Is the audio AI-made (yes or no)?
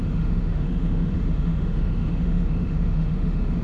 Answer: yes